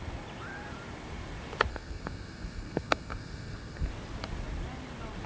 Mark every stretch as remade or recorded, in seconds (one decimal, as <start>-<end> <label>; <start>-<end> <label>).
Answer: 0.0-1.7 recorded; 1.7-3.9 remade; 3.9-5.3 recorded